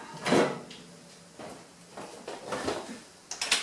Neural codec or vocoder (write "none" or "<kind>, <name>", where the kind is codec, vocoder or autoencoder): none